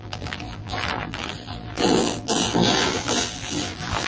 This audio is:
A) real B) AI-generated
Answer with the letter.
B